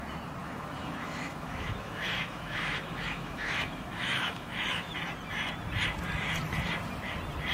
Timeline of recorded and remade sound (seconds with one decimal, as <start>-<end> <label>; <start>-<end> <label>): 0.0-0.4 recorded; 0.4-4.9 remade; 4.9-7.5 recorded